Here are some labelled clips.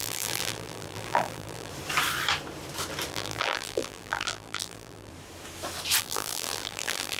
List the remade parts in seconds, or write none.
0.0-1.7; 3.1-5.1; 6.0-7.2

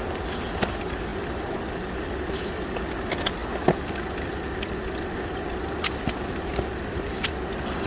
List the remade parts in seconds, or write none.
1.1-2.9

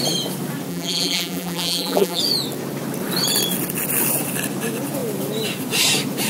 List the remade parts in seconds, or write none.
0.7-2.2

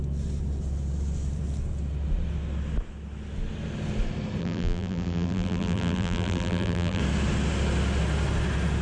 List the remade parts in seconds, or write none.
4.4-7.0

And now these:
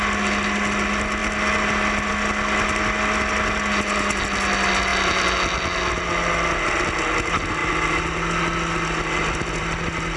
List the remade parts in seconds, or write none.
none

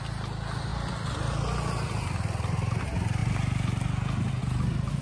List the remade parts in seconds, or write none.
none

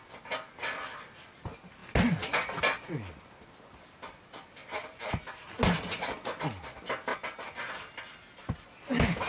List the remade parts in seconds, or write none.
4.6-5.1

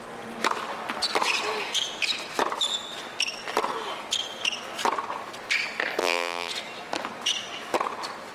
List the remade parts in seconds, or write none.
6.0-6.5